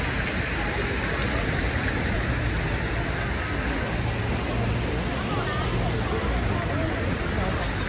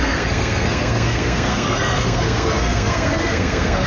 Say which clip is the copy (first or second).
second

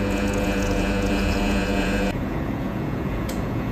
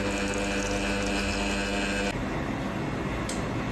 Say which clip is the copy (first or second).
first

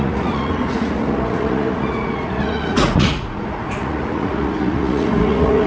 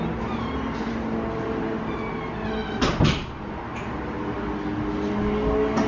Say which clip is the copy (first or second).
first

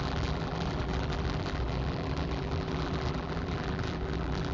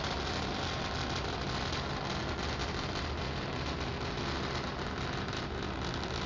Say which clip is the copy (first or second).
first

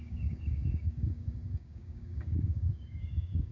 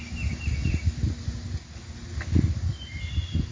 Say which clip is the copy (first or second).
first